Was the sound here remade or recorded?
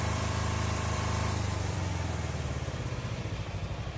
remade